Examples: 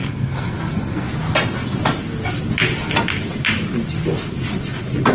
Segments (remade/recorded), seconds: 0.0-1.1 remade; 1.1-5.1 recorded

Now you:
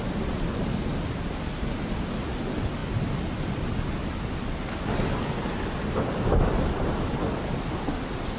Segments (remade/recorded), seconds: 0.0-8.4 recorded

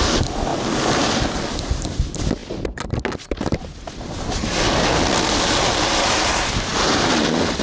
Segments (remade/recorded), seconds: 0.0-7.6 recorded

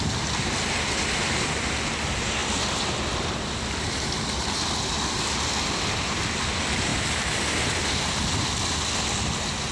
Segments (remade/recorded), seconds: 0.0-9.7 recorded